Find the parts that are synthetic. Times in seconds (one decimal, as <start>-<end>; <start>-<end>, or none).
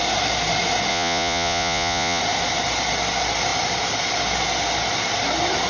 0.9-2.2